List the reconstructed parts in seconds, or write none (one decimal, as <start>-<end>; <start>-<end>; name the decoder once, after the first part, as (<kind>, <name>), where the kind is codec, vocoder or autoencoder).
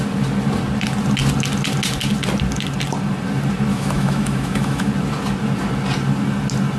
3.7-4.9 (autoencoder, DAC-VAE)